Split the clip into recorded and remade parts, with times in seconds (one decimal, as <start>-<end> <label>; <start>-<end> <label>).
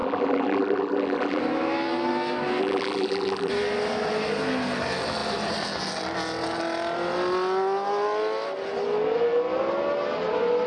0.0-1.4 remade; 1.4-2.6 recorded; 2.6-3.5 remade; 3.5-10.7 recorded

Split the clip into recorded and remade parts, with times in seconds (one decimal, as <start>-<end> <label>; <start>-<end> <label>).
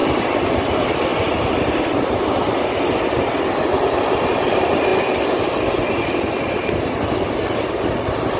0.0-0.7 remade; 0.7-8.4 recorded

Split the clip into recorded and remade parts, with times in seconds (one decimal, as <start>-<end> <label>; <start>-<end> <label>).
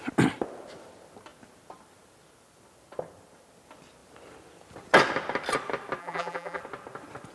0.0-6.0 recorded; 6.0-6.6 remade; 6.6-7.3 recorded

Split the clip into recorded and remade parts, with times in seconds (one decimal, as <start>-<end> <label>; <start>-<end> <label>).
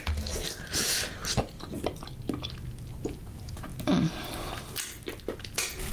0.0-5.9 recorded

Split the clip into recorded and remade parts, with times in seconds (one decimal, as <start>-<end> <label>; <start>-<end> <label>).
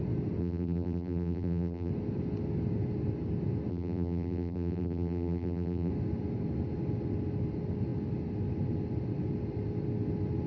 0.0-0.4 recorded; 0.4-1.9 remade; 1.9-3.7 recorded; 3.7-5.9 remade; 5.9-10.5 recorded